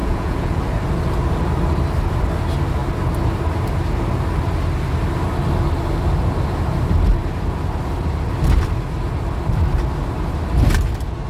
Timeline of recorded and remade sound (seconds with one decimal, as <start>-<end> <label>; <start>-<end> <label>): 0.0-0.6 remade; 0.6-11.3 recorded